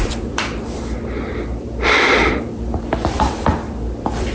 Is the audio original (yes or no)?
no